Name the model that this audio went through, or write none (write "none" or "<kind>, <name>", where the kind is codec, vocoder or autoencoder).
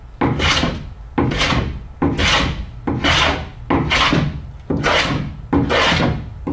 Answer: none